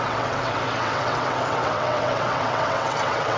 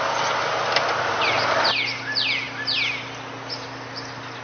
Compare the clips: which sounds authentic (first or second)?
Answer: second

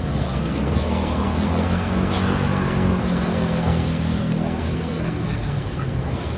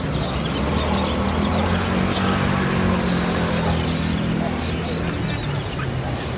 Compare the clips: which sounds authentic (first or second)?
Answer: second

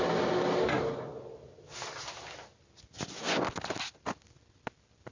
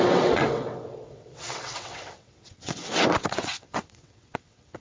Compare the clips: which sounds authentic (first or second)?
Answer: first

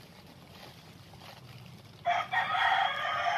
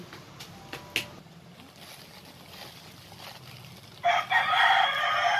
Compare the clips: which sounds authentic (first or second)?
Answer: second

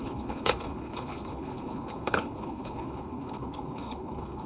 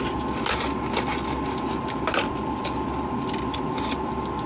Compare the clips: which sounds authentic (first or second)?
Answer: second